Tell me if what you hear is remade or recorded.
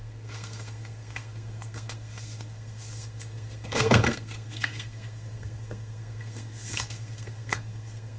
remade